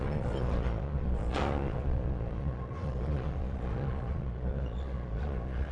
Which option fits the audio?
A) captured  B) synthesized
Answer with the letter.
B